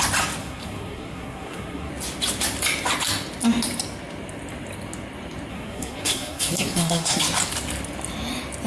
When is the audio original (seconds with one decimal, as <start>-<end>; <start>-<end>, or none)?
0.0-0.4; 1.9-5.5; 7.2-8.7